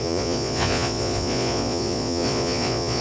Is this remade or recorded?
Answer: remade